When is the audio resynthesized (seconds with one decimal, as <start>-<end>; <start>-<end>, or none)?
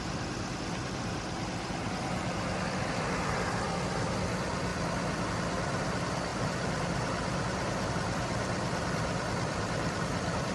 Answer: 0.0-4.7; 5.3-10.5